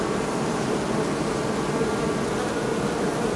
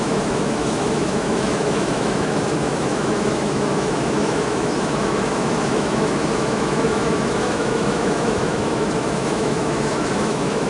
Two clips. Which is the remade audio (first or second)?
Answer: second